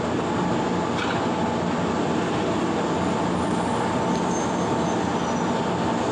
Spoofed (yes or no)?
no